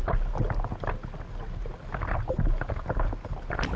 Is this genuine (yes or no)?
yes